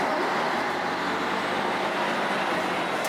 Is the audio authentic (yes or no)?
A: yes